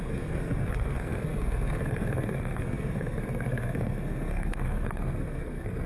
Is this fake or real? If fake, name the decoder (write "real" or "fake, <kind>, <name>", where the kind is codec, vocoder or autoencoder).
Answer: fake, codec, SNAC